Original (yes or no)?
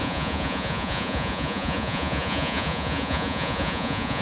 no